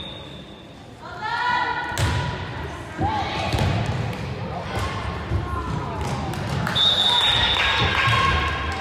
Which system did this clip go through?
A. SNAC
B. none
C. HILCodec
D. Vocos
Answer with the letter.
B